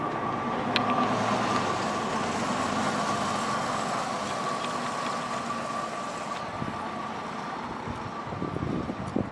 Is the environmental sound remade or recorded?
recorded